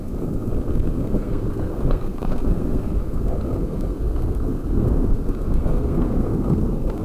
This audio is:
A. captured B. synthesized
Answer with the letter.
B